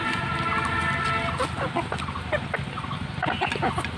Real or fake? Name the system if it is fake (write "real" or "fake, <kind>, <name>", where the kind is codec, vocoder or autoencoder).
real